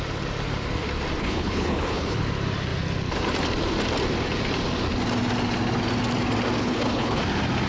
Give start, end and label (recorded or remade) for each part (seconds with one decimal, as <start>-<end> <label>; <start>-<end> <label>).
0.0-1.2 recorded; 1.2-2.2 remade; 2.2-6.6 recorded; 6.6-7.2 remade; 7.2-7.7 recorded